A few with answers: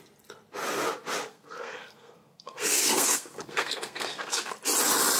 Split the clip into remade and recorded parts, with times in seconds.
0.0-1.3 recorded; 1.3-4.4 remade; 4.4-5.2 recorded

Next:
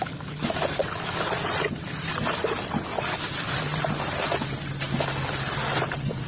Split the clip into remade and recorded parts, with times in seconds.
0.0-0.8 recorded; 0.8-2.4 remade; 2.4-2.9 recorded; 2.9-4.4 remade; 4.4-6.3 recorded

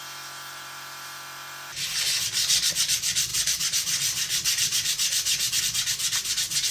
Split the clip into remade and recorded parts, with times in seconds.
0.0-3.3 recorded; 3.3-5.6 remade; 5.6-6.7 recorded

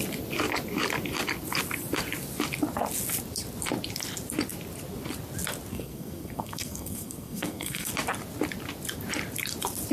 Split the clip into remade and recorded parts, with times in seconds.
0.0-5.7 recorded; 5.7-7.9 remade; 7.9-9.9 recorded